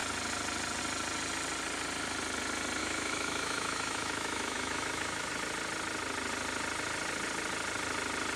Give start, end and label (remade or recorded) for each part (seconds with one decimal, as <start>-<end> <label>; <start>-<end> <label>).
0.0-2.8 recorded; 2.8-5.3 remade; 5.3-8.4 recorded